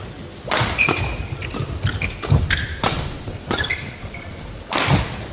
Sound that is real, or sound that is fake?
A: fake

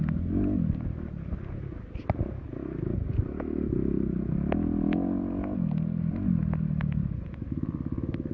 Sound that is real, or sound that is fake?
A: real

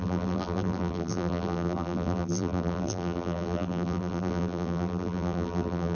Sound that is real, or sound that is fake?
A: fake